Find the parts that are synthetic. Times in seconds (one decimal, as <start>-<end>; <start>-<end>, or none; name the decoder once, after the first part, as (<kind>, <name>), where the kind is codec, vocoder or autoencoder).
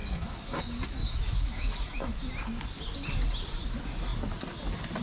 0.0-0.6 (autoencoder, DAC-VAE); 1.0-2.2